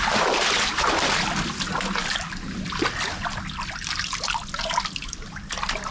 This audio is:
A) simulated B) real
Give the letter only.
B